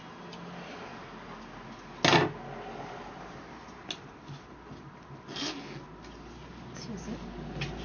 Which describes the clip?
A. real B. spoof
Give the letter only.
A